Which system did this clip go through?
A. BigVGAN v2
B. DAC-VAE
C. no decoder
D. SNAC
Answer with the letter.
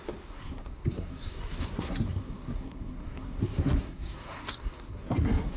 D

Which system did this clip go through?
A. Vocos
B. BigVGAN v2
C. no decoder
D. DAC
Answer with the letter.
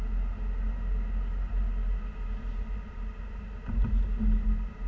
C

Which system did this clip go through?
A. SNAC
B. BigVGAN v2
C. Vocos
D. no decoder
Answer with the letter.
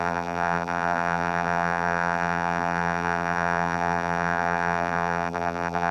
B